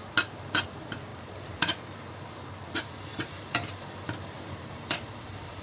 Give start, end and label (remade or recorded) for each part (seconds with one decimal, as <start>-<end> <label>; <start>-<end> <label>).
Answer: 0.0-1.1 recorded; 1.1-2.1 remade; 2.1-3.1 recorded; 3.1-5.6 remade